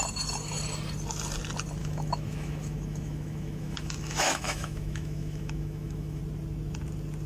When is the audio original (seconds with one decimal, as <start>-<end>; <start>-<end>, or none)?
0.0-1.8; 6.2-7.3